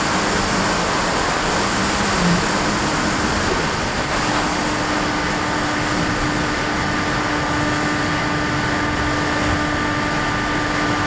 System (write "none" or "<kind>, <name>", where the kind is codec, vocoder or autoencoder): none